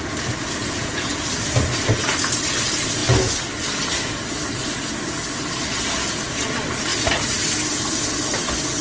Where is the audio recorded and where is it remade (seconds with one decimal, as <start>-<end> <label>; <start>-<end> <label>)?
0.0-0.6 recorded; 0.6-1.1 remade; 1.1-8.8 recorded